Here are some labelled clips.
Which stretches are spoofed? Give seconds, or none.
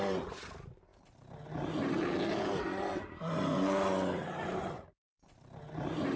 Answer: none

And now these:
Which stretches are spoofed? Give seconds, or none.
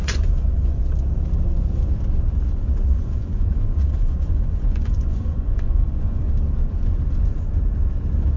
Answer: 0.0-0.8 (vocoder, Vocos); 2.9-6.3